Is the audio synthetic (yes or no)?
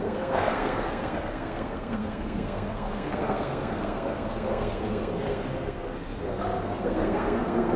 yes